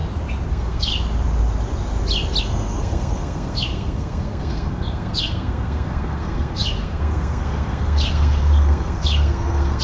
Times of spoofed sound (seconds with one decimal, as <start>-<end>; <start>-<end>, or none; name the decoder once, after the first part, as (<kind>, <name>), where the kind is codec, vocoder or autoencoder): 0.5-0.9 (codec, SNAC); 2.4-9.8